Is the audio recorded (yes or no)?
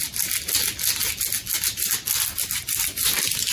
yes